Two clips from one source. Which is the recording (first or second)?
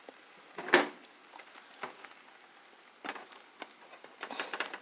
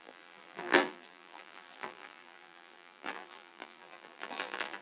first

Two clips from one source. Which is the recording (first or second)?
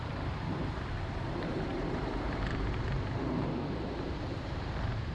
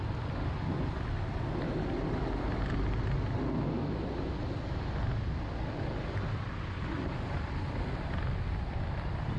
second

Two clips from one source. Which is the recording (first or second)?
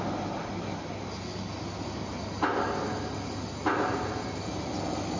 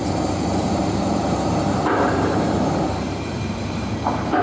first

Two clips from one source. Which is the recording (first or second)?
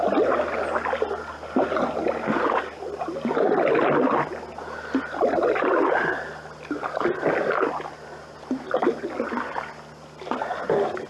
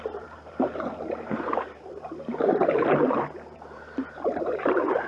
first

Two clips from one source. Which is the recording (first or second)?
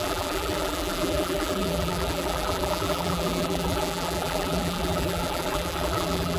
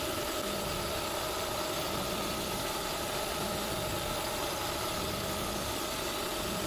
second